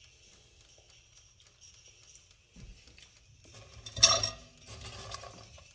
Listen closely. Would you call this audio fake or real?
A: real